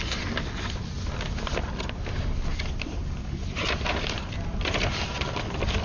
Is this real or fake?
real